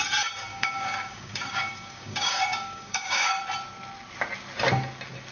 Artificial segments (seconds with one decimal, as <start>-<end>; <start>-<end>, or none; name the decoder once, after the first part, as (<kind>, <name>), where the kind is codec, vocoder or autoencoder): 0.5-3.4 (codec, DAC)